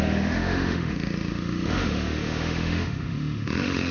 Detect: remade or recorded remade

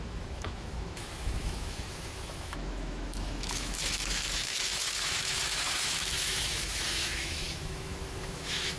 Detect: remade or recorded remade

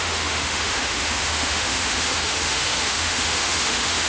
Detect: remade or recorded remade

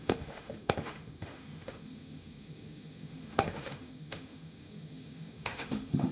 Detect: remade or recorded remade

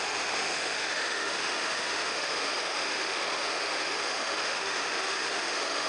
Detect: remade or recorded remade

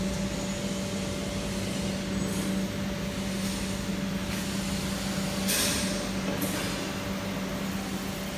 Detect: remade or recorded recorded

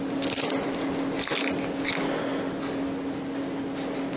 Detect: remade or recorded recorded